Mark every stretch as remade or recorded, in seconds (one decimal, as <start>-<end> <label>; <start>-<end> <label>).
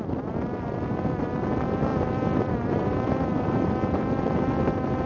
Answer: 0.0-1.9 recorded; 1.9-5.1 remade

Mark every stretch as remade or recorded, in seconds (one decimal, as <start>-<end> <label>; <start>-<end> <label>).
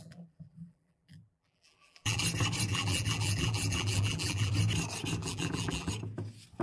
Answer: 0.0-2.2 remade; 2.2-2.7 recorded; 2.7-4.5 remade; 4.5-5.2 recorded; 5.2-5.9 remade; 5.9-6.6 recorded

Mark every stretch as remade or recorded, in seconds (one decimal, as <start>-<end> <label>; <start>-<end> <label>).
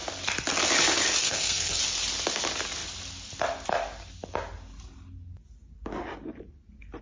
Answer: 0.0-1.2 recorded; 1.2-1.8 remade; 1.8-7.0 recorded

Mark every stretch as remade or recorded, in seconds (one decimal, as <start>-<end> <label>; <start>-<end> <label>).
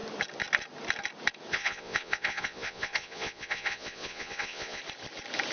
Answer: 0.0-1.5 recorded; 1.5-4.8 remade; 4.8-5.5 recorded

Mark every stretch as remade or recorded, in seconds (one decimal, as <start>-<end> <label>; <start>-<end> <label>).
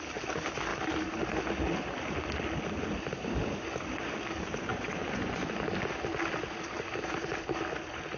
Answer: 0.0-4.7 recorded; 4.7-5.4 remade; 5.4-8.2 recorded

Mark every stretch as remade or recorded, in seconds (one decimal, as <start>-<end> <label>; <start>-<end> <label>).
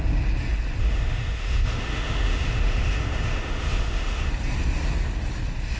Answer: 0.0-0.8 recorded; 0.8-4.3 remade; 4.3-5.8 recorded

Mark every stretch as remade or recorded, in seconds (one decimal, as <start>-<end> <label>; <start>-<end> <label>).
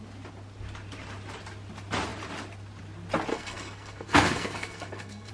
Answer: 0.0-3.3 recorded; 3.3-5.3 remade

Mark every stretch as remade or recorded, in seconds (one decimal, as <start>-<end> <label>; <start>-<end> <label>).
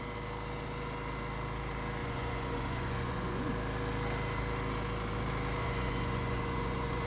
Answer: 0.0-2.0 recorded; 2.0-3.5 remade; 3.5-5.6 recorded; 5.6-7.1 remade